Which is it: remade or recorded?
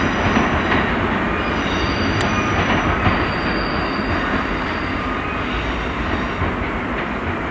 recorded